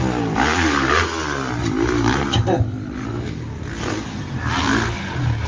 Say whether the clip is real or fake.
real